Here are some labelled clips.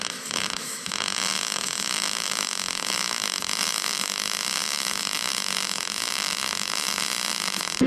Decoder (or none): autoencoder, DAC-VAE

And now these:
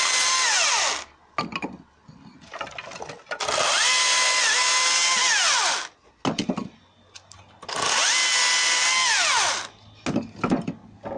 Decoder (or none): none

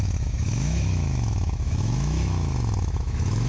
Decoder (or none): autoencoder, DAC-VAE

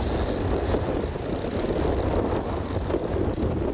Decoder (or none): none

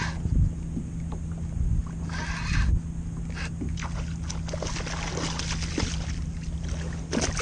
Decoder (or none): none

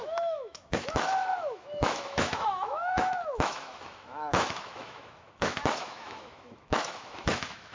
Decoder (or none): autoencoder, DAC-VAE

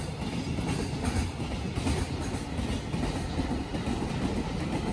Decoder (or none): none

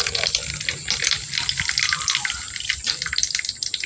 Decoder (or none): none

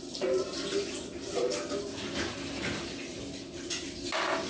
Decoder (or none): none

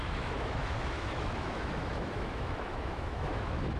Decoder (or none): autoencoder, DAC-VAE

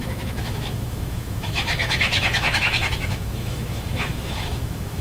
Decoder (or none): autoencoder, DAC-VAE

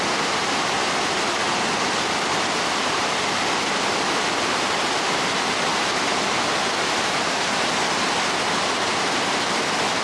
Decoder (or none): none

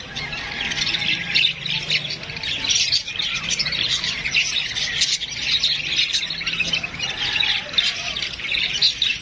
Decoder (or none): none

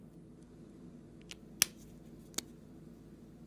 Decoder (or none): none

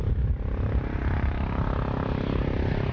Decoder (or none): none